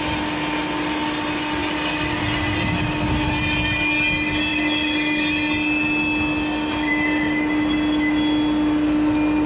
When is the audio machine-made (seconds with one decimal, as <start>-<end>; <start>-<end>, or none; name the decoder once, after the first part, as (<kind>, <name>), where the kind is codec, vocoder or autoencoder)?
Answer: none